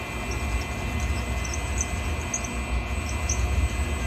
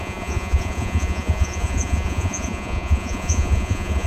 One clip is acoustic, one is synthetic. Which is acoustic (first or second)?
first